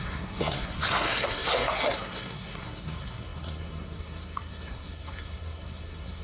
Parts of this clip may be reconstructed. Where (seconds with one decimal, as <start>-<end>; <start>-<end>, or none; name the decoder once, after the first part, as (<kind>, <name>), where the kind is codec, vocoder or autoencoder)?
0.0-6.2 (codec, SNAC)